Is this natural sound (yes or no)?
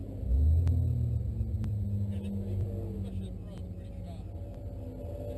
yes